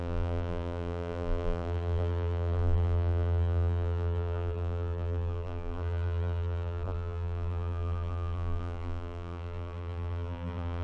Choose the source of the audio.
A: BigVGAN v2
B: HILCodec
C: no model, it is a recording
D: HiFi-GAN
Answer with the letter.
A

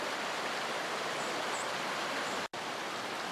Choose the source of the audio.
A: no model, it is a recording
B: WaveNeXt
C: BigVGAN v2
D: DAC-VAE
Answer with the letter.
A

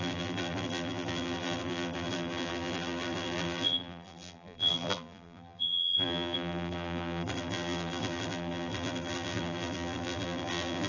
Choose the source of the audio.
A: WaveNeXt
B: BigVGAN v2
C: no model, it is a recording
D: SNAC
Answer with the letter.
B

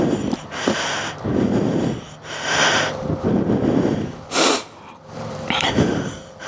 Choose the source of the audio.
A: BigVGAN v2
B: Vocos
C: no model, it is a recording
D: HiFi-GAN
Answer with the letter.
A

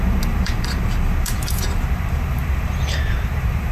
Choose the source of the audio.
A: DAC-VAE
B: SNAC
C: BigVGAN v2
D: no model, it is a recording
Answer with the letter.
C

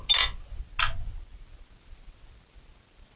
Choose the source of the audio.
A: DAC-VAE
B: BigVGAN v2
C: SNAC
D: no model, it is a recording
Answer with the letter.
D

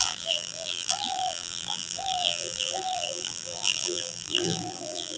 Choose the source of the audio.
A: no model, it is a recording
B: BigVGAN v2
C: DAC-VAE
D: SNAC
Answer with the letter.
B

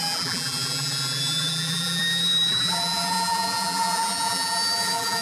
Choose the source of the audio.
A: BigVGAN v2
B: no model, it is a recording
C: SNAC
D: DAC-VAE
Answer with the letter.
A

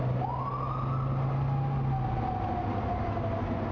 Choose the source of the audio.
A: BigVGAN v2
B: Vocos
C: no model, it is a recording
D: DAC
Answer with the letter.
C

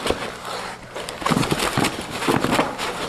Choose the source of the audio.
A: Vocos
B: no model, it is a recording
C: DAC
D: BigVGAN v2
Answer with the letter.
B